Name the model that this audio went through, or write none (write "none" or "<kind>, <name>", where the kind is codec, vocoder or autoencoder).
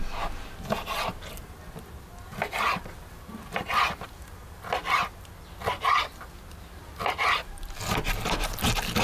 none